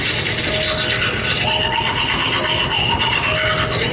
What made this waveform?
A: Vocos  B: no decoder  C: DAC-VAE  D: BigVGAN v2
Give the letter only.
B